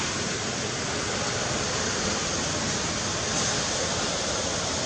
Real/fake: real